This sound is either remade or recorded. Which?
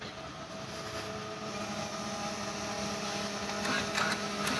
recorded